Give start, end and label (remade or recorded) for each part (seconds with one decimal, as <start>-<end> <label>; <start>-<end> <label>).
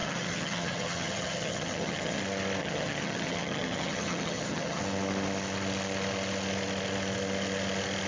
0.0-2.2 remade; 2.2-2.6 recorded; 2.6-4.8 remade; 4.8-8.1 recorded